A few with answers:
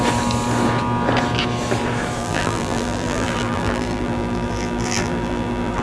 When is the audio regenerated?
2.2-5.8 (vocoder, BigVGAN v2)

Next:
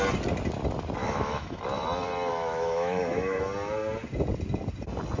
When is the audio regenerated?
1.0-1.6 (autoencoder, DAC-VAE); 2.3-3.4

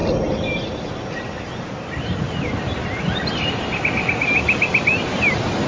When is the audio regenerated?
0.0-3.0 (vocoder, BigVGAN v2)